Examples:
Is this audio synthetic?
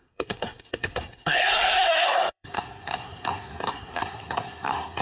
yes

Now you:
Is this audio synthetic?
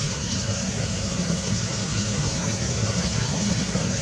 yes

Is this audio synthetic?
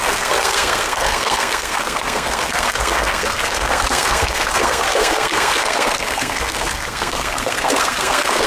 yes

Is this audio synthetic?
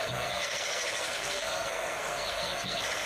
yes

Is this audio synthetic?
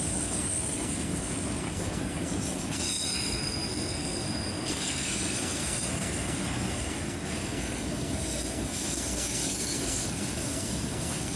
yes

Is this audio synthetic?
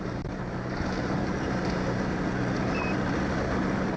no